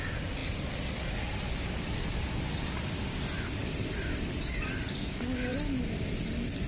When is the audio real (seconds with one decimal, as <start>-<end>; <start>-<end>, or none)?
0.0-3.6; 4.5-5.5